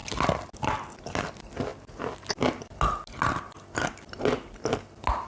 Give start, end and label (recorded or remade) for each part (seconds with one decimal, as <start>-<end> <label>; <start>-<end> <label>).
0.0-5.3 recorded